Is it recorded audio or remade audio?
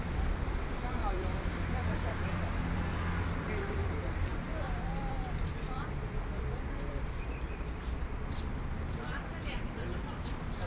remade